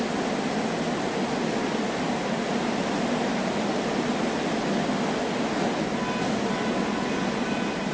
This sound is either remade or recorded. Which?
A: recorded